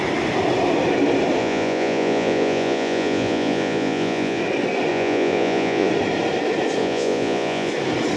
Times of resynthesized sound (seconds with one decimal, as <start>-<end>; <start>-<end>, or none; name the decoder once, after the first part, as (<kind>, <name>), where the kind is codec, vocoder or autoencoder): 1.4-4.4 (vocoder, Vocos); 4.9-5.9; 6.8-7.7